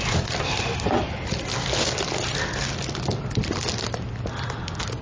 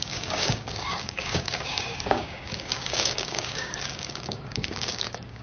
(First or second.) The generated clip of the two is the second